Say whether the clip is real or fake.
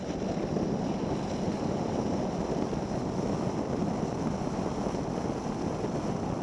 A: real